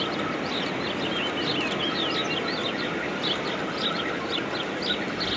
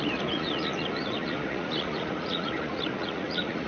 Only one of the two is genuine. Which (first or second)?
first